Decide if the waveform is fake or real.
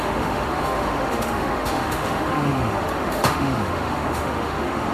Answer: fake